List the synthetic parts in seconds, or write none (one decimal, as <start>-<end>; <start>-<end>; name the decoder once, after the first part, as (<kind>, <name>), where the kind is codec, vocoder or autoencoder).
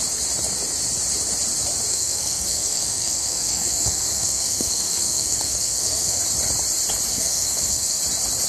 1.9-6.2 (codec, SNAC); 7.1-8.0